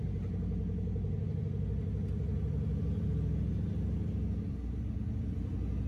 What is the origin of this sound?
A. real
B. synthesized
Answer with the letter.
A